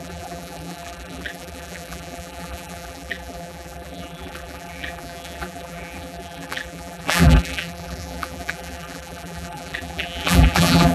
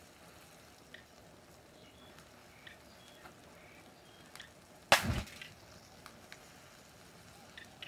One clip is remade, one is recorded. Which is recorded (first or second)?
second